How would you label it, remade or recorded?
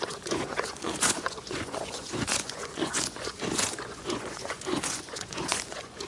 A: remade